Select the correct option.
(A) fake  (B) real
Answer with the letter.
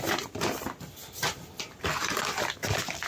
A